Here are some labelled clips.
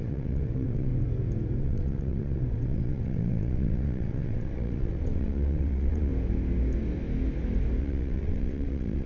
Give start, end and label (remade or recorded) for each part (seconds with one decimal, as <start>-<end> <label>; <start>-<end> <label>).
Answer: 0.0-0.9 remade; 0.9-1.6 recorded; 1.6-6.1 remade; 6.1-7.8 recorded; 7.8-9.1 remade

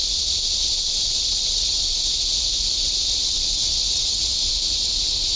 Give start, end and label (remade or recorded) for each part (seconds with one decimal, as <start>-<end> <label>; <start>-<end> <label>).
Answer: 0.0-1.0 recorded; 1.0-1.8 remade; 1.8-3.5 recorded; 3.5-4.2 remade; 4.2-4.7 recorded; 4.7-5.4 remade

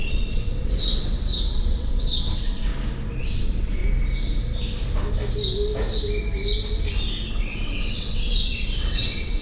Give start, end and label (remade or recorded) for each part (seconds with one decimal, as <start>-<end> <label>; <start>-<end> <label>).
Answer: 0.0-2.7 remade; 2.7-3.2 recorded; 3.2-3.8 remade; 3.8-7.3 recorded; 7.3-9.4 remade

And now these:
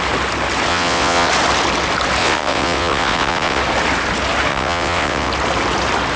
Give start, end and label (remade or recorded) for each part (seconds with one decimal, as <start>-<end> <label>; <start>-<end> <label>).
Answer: 0.0-0.7 recorded; 0.7-1.3 remade; 1.3-2.2 recorded; 2.2-3.6 remade; 3.6-4.5 recorded; 4.5-5.3 remade; 5.3-6.2 recorded

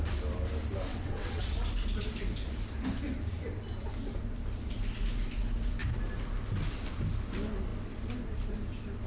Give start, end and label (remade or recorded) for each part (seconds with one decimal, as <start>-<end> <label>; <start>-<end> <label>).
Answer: 0.0-0.9 recorded; 0.9-1.4 remade; 1.4-9.1 recorded